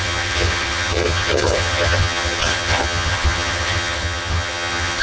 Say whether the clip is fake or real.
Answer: fake